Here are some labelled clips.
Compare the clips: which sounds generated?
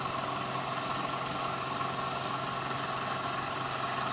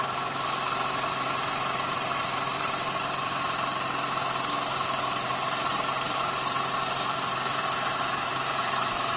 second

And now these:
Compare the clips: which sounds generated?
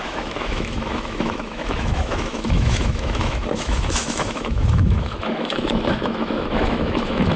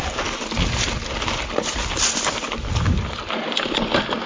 first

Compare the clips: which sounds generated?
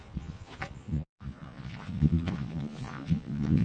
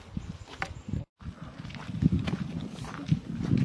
first